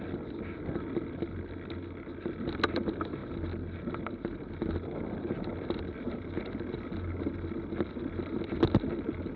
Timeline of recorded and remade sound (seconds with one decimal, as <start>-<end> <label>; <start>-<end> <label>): 0.0-9.4 recorded